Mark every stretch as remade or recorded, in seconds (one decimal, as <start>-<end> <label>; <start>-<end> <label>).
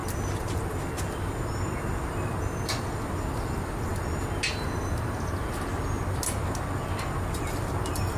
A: 0.0-8.2 recorded